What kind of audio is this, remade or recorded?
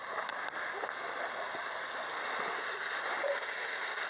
recorded